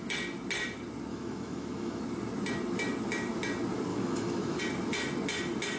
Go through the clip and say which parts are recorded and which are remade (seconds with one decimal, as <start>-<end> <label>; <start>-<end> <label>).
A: 0.0-1.1 recorded; 1.1-2.0 remade; 2.0-3.9 recorded; 3.9-4.6 remade; 4.6-5.8 recorded